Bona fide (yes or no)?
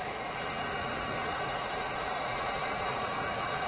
no